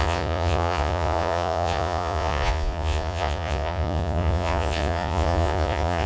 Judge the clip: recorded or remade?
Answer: remade